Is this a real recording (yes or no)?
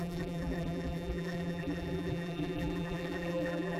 no